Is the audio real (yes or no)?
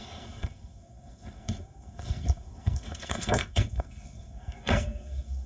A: no